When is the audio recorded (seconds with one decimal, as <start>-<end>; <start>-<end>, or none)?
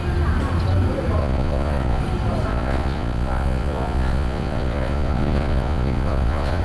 0.0-1.2; 2.0-2.5